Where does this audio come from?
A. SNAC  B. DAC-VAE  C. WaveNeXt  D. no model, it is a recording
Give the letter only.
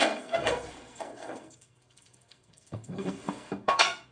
A